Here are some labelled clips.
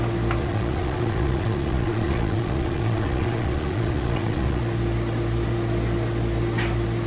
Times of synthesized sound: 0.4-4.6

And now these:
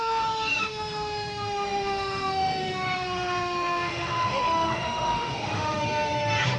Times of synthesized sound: 0.0-6.6

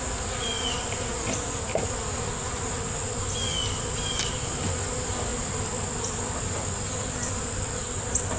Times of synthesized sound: none

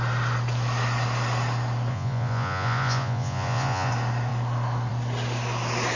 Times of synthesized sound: 1.9-3.9

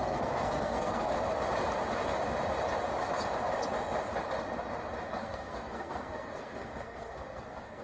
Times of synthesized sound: 0.0-1.1; 5.1-7.8

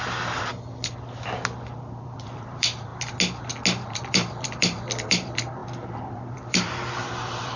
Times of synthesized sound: 0.0-0.5; 2.0-2.9; 3.9-7.6

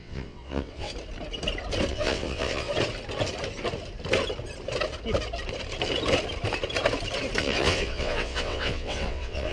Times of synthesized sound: 0.0-0.9; 1.9-2.7; 7.4-9.5